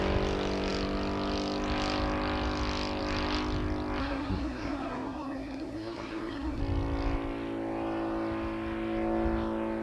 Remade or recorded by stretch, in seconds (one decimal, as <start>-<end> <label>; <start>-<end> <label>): 0.0-4.0 recorded; 4.0-6.6 remade; 6.6-9.8 recorded